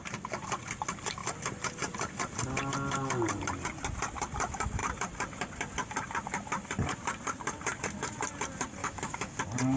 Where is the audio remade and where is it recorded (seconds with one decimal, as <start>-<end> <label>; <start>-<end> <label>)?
0.0-8.8 recorded; 8.8-9.4 remade; 9.4-9.8 recorded

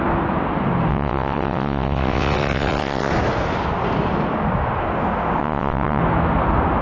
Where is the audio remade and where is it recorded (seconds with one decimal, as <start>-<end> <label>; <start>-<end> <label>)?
0.0-0.9 recorded; 0.9-3.1 remade; 3.1-5.4 recorded; 5.4-6.0 remade; 6.0-6.8 recorded

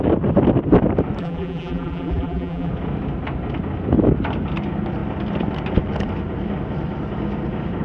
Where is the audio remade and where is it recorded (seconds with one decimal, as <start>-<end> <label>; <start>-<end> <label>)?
0.0-1.2 recorded; 1.2-2.7 remade; 2.7-7.8 recorded

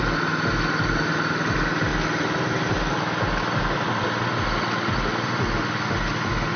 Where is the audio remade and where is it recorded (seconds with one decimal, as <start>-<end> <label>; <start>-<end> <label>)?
0.0-6.6 recorded

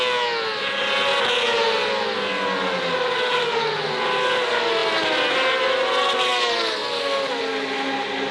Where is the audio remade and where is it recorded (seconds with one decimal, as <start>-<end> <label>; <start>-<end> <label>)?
0.0-8.3 recorded

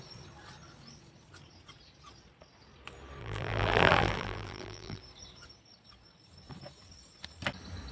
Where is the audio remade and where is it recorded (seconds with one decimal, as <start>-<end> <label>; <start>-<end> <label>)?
0.0-3.2 recorded; 3.2-5.0 remade; 5.0-7.9 recorded